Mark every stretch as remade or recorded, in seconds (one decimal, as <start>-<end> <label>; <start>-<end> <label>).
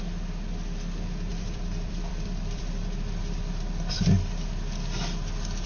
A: 0.0-1.3 recorded; 1.3-4.0 remade; 4.0-5.7 recorded